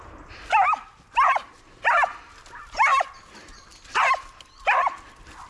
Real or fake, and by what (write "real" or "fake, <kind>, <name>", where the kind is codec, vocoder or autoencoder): real